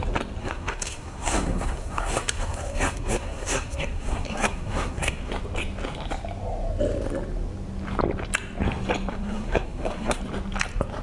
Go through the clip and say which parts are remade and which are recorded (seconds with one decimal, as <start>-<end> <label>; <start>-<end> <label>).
0.0-0.4 recorded; 0.4-5.3 remade; 5.3-9.1 recorded; 9.1-10.2 remade; 10.2-11.0 recorded